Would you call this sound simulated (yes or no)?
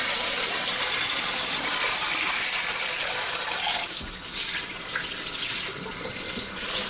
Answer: no